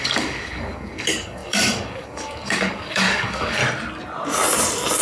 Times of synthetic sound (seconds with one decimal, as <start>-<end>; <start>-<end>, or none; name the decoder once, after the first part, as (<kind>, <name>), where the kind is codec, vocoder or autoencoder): 0.0-3.6 (codec, DAC)